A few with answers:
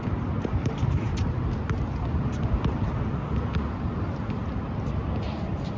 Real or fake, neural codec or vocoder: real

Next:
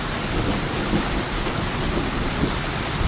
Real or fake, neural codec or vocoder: real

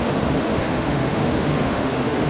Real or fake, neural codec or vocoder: fake, autoencoder, DAC-VAE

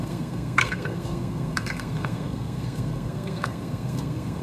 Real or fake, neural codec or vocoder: fake, codec, SNAC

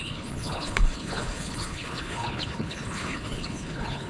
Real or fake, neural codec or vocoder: fake, codec, HILCodec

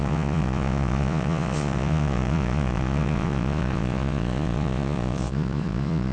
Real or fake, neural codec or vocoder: fake, vocoder, Vocos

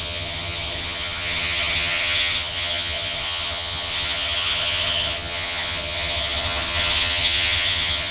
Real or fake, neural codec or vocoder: fake, vocoder, HiFi-GAN